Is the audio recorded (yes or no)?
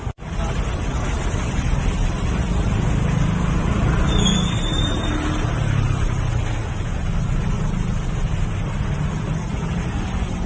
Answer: yes